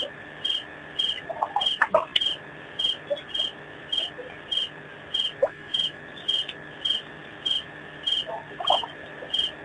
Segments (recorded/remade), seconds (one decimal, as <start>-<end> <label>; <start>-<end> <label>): 0.0-5.4 recorded; 5.4-6.0 remade; 6.0-9.6 recorded